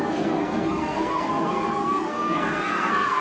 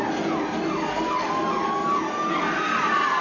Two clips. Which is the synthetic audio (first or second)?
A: first